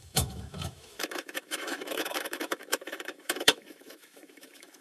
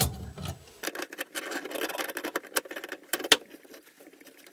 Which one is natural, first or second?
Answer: second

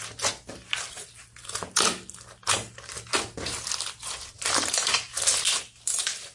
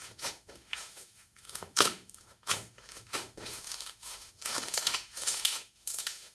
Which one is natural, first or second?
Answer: first